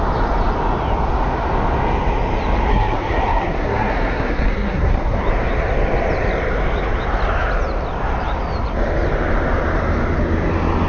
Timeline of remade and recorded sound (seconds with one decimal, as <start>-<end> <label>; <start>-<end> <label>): 0.0-2.7 recorded; 2.7-5.2 remade; 5.2-10.9 recorded